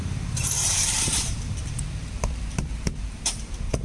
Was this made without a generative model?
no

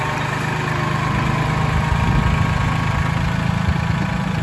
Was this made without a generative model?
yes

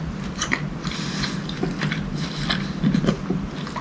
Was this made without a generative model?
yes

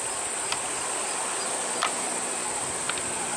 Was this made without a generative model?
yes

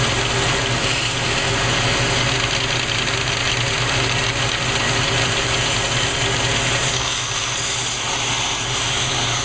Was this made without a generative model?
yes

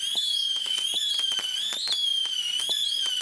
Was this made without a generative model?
yes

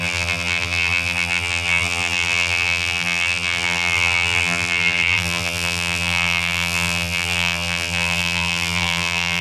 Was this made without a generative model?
no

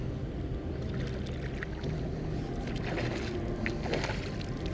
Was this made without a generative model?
yes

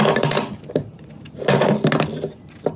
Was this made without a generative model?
yes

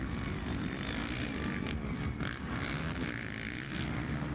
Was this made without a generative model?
yes